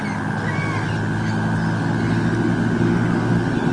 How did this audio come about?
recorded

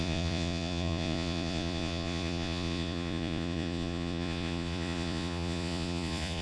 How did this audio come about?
remade